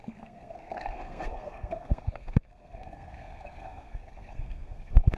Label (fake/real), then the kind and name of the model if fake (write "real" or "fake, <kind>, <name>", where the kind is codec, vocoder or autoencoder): fake, codec, SNAC